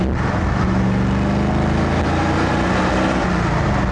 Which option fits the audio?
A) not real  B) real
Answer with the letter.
B